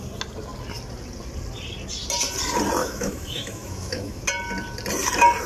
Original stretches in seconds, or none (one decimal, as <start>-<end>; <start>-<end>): 0.0-2.8; 4.2-5.5